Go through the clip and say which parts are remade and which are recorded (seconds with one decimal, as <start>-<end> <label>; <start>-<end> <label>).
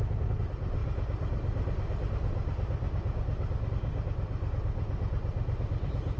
0.0-6.2 recorded